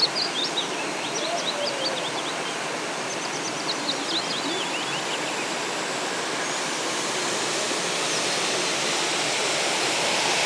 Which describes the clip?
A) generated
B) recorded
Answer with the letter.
B